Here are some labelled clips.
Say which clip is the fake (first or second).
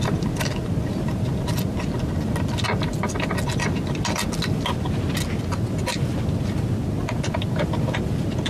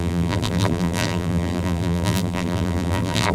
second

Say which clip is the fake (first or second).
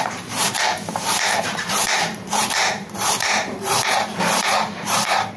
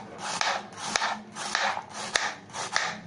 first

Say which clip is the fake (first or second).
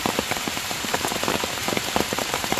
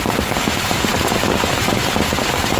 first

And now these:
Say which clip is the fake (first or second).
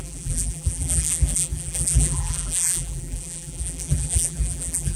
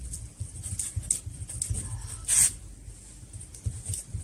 first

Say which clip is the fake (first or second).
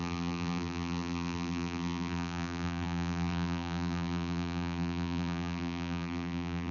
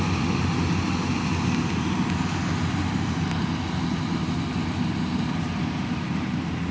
first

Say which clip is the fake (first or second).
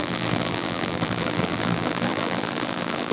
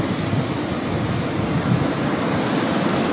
first